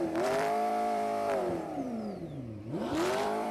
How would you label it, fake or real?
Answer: fake